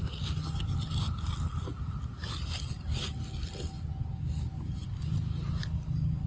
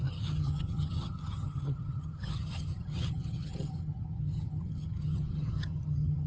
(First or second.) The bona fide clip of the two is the first